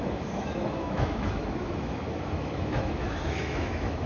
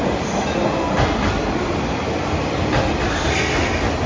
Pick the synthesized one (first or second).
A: first